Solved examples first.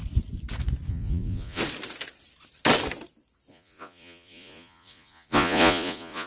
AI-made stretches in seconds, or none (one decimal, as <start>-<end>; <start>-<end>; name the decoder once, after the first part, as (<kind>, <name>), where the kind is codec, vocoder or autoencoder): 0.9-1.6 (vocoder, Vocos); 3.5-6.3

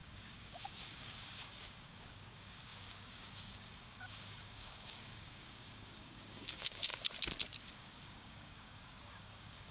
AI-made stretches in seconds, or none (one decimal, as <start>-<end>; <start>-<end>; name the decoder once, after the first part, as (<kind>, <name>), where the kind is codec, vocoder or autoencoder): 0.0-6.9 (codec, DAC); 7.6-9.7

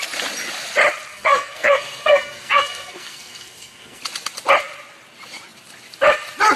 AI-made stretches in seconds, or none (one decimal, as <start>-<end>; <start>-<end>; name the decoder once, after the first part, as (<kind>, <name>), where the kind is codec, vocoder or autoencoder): 1.1-4.0 (codec, SNAC)

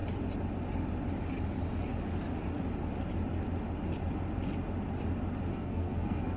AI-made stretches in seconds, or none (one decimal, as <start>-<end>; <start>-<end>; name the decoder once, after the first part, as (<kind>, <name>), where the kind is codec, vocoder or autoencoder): 5.5-6.4 (codec, SNAC)